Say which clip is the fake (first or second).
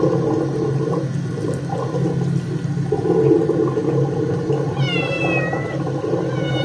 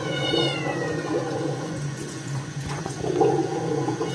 second